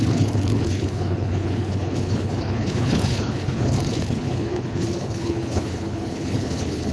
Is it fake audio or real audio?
fake